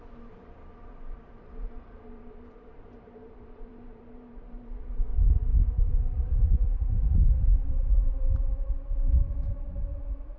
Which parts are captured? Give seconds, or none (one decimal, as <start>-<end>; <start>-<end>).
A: 5.1-5.8